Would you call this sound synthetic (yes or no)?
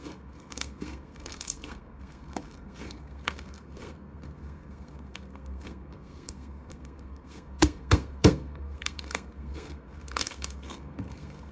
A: yes